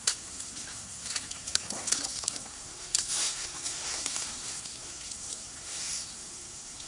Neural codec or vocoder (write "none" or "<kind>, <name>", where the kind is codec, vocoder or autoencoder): codec, SNAC